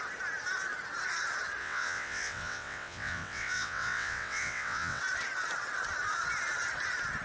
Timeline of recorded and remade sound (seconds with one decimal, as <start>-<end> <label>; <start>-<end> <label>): 0.0-1.6 recorded; 1.6-5.0 remade; 5.0-7.2 recorded

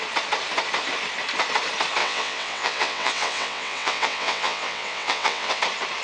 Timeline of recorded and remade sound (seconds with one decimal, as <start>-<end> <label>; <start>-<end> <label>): 0.0-2.0 recorded; 2.0-5.6 remade; 5.6-6.0 recorded